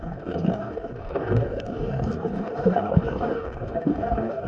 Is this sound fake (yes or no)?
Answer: yes